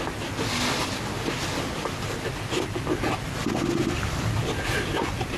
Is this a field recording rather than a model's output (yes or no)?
yes